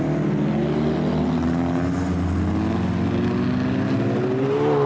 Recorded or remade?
recorded